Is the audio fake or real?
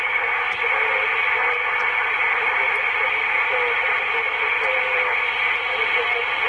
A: real